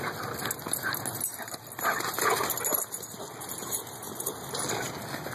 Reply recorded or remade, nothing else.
recorded